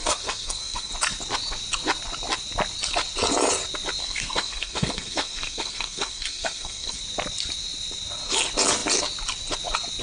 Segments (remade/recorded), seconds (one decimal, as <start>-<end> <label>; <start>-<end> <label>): 0.0-0.9 remade; 0.9-4.0 recorded; 4.0-7.0 remade; 7.0-10.0 recorded